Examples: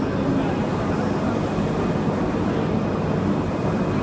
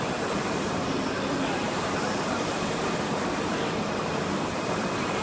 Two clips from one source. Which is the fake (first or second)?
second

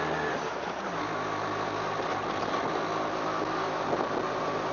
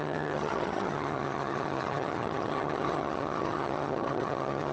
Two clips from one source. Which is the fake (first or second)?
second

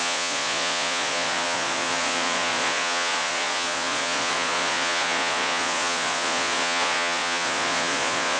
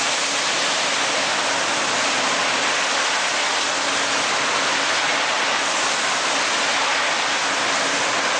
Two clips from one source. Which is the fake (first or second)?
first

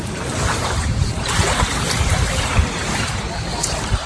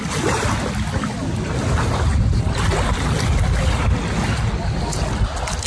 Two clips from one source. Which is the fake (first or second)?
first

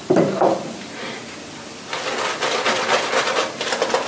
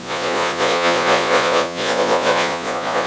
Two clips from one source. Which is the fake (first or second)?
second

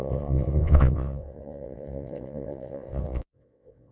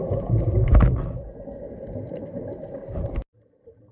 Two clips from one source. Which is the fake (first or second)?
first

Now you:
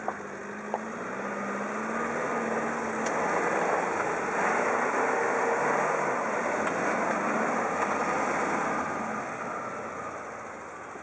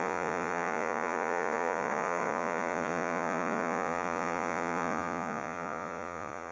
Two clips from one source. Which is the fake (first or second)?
second